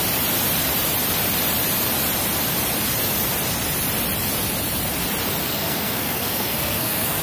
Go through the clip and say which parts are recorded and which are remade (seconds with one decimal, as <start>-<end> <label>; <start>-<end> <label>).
0.0-5.4 recorded; 5.4-7.2 remade